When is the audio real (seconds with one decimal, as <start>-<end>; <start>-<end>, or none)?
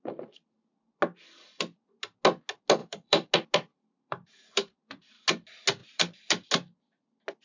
0.0-2.8; 3.3-3.7; 5.2-5.8; 6.5-7.4